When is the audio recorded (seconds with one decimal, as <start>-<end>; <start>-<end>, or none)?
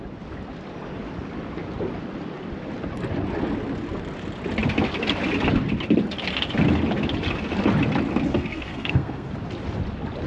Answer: 0.0-8.3; 9.3-10.3